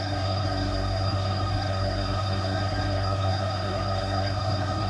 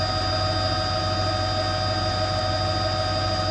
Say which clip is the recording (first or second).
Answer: second